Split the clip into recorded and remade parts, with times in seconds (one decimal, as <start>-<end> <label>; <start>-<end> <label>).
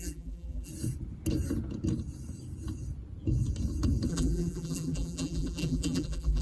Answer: 0.0-0.7 remade; 0.7-4.1 recorded; 4.1-6.4 remade